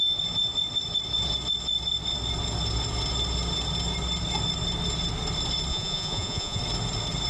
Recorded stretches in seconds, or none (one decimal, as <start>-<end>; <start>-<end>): 0.0-5.7; 6.6-7.3